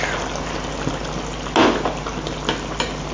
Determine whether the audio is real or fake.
real